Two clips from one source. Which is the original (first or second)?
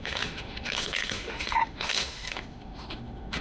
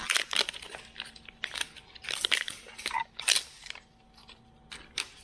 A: second